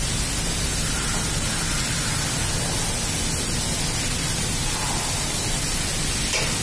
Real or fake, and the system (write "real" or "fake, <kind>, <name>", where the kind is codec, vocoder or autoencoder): real